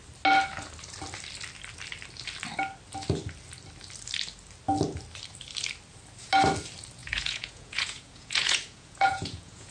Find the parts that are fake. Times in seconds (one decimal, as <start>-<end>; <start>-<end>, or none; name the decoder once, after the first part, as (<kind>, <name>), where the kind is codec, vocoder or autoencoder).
7.0-9.7 (vocoder, Vocos)